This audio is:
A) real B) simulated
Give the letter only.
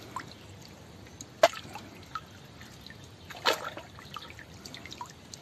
A